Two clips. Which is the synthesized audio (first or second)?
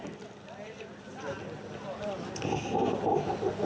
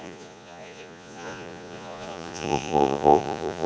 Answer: second